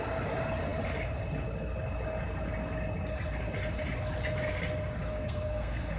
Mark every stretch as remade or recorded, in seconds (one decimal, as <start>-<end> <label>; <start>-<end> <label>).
0.0-5.1 recorded; 5.1-6.0 remade